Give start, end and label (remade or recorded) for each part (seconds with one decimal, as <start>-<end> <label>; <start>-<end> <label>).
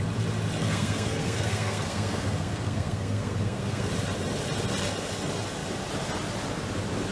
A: 0.0-0.6 recorded; 0.6-3.9 remade; 3.9-7.1 recorded